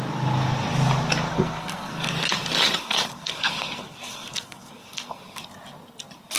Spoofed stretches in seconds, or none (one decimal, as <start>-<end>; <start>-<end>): 1.3-2.1; 2.8-5.4